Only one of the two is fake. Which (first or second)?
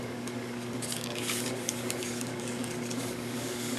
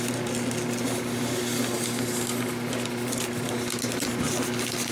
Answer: first